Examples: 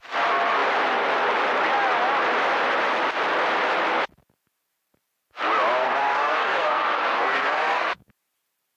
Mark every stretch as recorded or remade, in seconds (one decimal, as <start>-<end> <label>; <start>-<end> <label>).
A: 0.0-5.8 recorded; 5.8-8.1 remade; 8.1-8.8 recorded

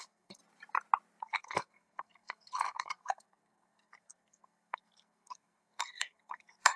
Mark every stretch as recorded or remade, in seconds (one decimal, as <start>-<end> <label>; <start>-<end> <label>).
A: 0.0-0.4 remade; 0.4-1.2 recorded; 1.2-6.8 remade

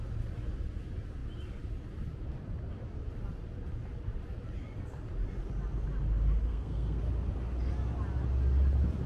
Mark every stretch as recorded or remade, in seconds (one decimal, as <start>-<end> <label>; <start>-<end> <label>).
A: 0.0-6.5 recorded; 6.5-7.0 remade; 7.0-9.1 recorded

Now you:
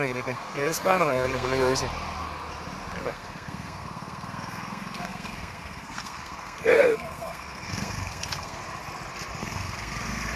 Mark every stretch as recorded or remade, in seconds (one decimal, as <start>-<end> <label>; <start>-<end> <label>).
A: 0.0-1.8 remade; 1.8-3.0 recorded; 3.0-8.6 remade; 8.6-9.4 recorded; 9.4-10.4 remade

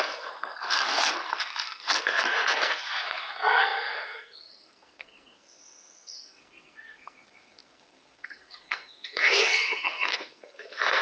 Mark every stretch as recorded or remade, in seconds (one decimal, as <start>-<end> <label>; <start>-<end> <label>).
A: 0.0-11.0 remade

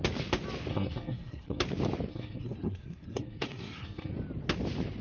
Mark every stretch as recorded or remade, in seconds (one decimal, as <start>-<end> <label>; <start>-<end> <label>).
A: 0.0-0.7 recorded; 0.7-1.6 remade; 1.6-2.1 recorded; 2.1-4.1 remade; 4.1-5.0 recorded